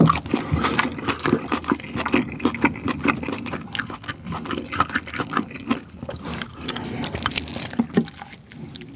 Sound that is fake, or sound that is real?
real